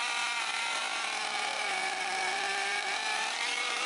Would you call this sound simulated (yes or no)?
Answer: yes